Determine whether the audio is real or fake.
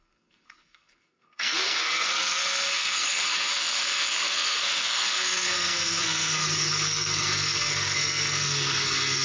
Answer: fake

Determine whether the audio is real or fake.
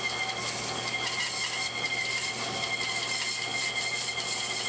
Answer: real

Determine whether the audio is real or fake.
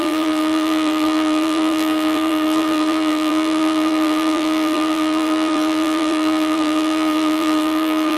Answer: fake